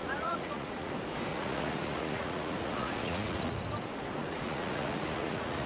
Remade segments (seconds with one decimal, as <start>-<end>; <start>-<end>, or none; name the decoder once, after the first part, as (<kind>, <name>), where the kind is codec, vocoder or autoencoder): 0.0-0.9 (vocoder, Vocos); 1.3-3.6; 4.2-5.7